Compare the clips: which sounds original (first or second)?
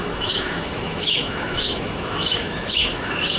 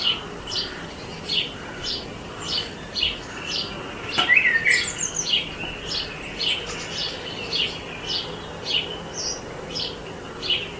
second